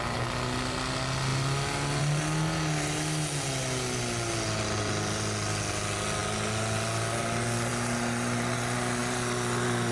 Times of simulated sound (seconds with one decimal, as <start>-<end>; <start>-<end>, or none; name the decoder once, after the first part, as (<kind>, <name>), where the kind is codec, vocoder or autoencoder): none